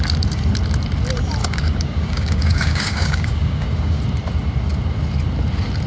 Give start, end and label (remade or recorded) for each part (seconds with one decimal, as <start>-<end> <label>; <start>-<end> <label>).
0.0-1.4 recorded; 1.4-4.0 remade; 4.0-5.9 recorded